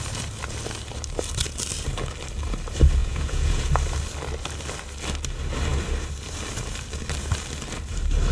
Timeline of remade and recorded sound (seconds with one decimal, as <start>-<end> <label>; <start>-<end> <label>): 0.0-3.0 recorded; 3.0-3.7 remade; 3.7-8.3 recorded